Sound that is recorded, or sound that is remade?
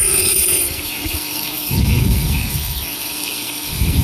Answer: remade